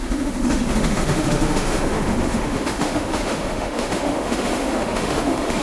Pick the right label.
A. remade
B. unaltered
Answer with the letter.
A